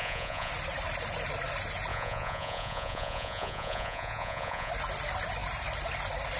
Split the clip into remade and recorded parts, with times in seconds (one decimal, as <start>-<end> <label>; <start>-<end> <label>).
0.0-0.5 remade; 0.5-1.9 recorded; 1.9-4.7 remade; 4.7-6.4 recorded